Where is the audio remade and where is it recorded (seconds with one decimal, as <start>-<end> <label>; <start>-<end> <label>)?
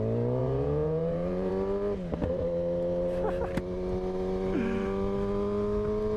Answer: 0.0-0.4 recorded; 0.4-1.5 remade; 1.5-6.2 recorded